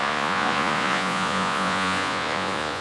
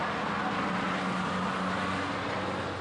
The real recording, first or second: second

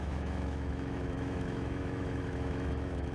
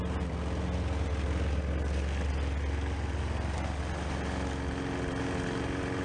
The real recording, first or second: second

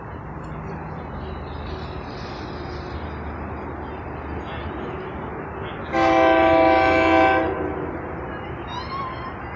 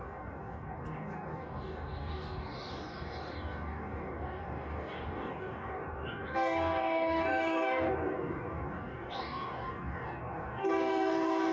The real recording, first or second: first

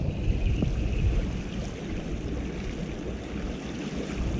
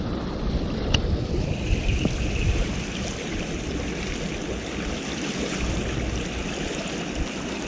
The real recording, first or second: first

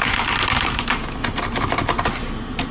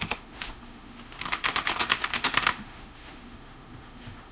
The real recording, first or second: first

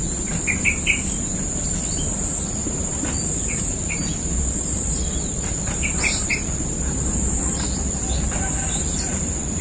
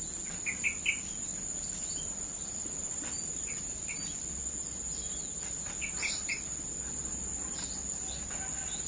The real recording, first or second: second